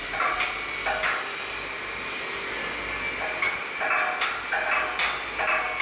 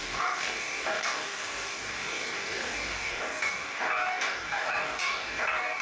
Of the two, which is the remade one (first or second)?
second